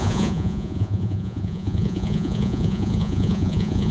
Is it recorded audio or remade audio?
remade